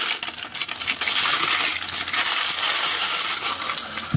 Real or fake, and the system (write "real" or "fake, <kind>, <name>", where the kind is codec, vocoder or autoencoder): real